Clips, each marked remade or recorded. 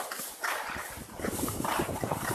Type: remade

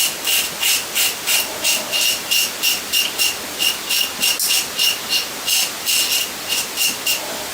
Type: recorded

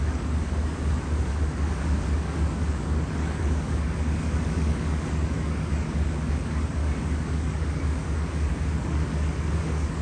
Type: remade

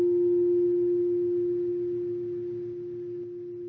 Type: recorded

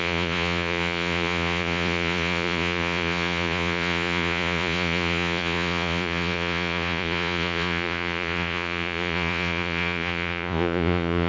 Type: remade